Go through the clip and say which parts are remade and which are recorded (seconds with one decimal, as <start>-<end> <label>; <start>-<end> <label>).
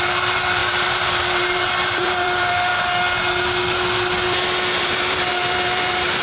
0.0-2.7 remade; 2.7-4.8 recorded; 4.8-6.2 remade